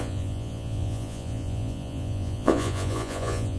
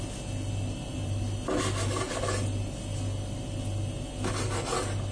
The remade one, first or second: first